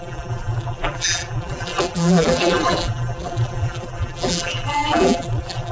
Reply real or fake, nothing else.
fake